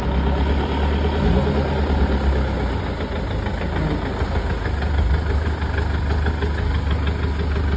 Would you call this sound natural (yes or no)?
yes